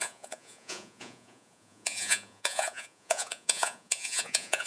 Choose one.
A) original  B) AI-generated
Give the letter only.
B